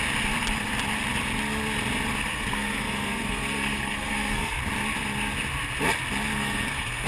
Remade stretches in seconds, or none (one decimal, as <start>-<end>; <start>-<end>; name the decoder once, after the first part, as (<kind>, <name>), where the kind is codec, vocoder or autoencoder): 2.3-4.6 (codec, SNAC); 6.3-7.1